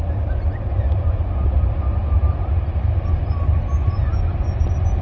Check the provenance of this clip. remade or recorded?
recorded